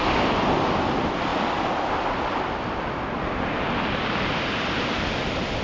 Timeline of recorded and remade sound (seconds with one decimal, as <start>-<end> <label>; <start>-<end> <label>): 0.0-5.6 recorded